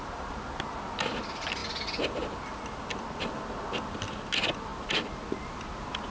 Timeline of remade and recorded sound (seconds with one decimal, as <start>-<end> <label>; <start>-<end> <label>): 0.0-6.1 recorded